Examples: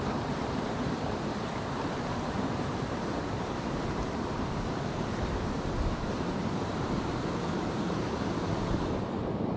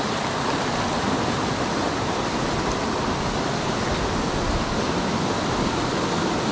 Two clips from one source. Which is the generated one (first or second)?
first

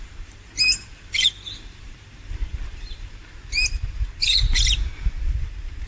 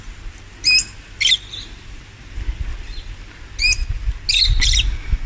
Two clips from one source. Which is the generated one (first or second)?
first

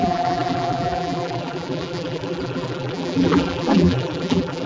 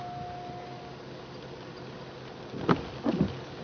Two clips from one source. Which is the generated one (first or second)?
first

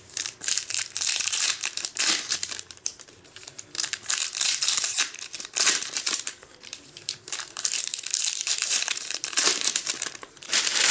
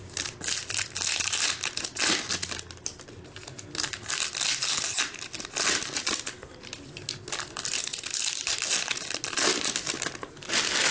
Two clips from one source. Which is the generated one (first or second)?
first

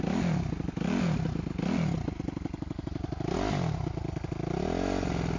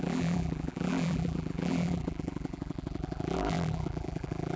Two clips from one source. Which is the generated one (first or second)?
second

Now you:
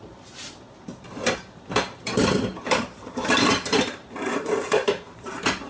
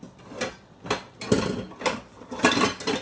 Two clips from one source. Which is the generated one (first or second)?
first